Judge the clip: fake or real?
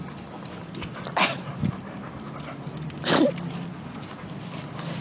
real